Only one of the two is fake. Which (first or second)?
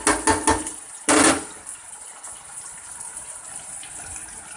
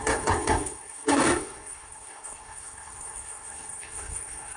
second